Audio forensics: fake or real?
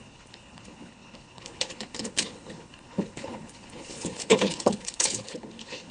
fake